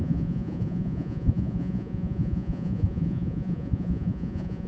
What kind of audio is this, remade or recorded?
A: remade